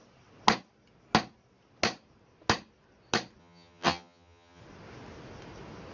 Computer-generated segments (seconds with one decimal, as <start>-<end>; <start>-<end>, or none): 3.4-4.6